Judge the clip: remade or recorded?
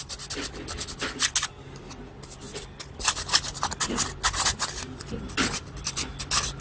recorded